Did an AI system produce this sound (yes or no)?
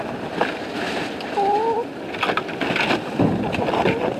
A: no